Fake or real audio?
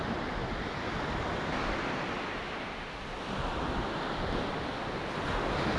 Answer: real